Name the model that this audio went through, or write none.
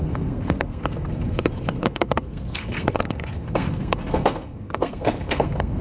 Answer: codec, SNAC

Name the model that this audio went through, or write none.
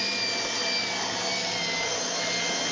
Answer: none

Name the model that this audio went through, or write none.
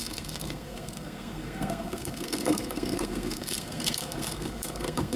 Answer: codec, SNAC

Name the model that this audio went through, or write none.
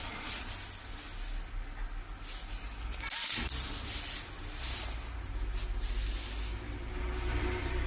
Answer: none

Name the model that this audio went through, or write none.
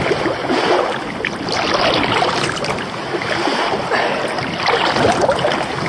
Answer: none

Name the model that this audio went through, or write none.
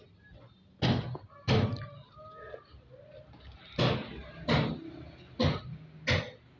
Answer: none